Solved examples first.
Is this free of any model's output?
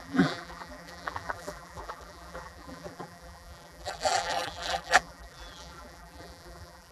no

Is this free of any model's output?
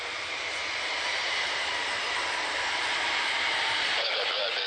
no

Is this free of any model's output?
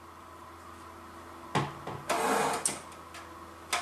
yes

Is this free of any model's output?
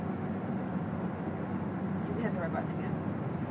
yes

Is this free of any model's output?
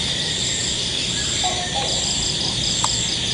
yes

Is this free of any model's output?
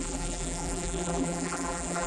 no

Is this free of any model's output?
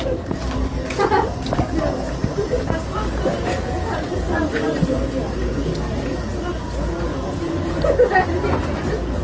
yes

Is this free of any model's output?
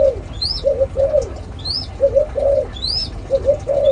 yes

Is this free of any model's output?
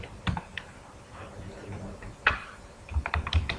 no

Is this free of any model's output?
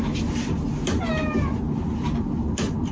yes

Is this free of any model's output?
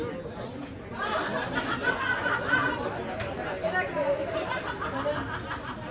yes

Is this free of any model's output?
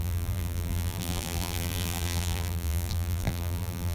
no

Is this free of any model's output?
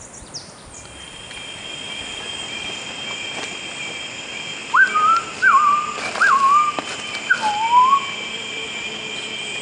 yes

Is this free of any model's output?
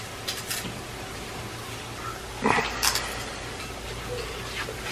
no